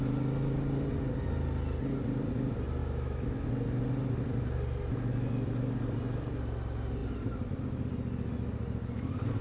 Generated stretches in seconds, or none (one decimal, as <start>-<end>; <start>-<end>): 2.8-3.5